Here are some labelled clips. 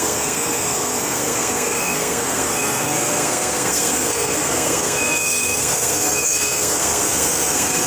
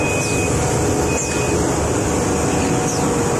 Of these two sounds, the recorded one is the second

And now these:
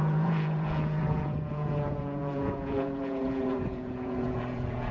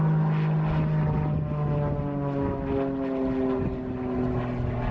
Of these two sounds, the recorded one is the second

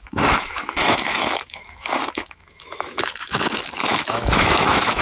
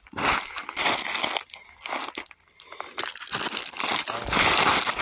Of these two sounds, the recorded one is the second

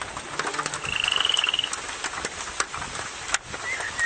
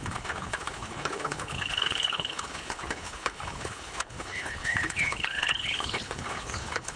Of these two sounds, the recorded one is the first